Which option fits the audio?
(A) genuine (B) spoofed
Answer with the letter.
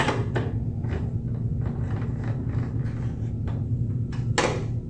A